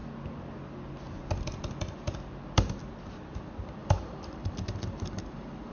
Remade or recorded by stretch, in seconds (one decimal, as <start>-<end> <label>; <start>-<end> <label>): 0.0-3.8 recorded; 3.8-5.7 remade